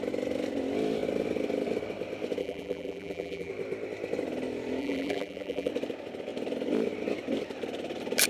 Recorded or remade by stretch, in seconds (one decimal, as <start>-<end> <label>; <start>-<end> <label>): 0.0-2.4 recorded; 2.4-3.5 remade; 3.5-4.8 recorded; 4.8-5.7 remade; 5.7-8.3 recorded